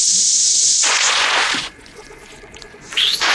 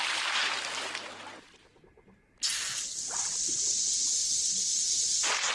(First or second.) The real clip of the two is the second